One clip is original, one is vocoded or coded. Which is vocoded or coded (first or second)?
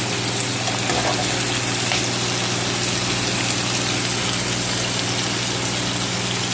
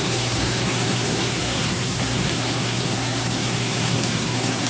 second